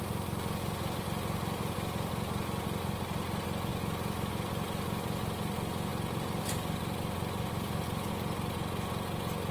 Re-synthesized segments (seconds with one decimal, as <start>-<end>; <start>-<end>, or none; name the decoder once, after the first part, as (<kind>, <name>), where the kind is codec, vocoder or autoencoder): 5.9-8.1 (vocoder, BigVGAN v2)